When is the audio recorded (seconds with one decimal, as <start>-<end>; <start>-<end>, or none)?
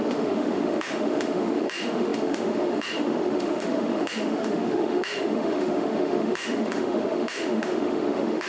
none